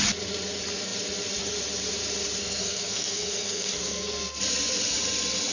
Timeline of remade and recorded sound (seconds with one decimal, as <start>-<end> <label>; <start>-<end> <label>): 0.0-2.4 recorded; 2.4-4.4 remade; 4.4-5.5 recorded